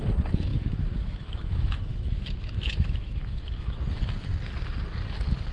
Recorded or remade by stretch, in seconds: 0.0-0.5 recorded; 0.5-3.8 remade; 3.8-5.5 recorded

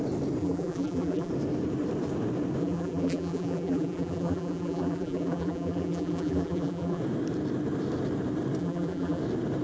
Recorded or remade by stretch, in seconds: 0.0-0.4 recorded; 0.4-1.3 remade; 1.3-2.6 recorded; 2.6-7.0 remade; 7.0-8.6 recorded; 8.6-9.2 remade; 9.2-9.6 recorded

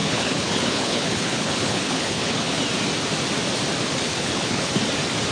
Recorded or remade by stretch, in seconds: 0.0-2.6 remade; 2.6-4.1 recorded; 4.1-4.7 remade; 4.7-5.3 recorded

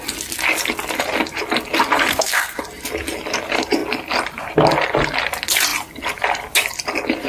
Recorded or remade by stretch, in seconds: 0.0-2.1 recorded; 2.1-2.6 remade; 2.6-7.3 recorded

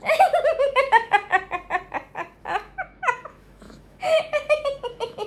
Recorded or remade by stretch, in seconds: 0.0-1.3 remade; 1.3-2.4 recorded; 2.4-5.3 remade